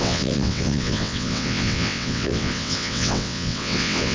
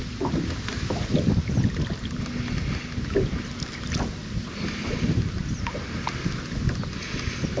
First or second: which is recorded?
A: second